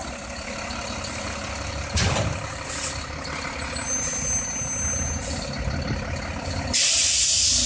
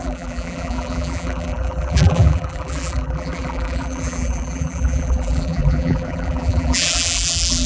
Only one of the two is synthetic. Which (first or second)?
second